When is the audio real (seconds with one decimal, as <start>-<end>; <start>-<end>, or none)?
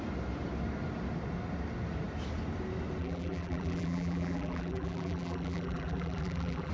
0.0-3.0